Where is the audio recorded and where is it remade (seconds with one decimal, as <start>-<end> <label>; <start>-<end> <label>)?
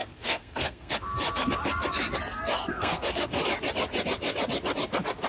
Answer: 0.0-0.9 remade; 0.9-2.7 recorded; 2.7-3.4 remade; 3.4-5.3 recorded